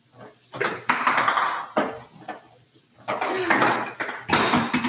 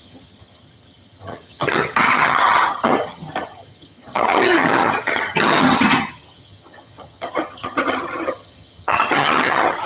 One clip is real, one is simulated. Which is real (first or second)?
first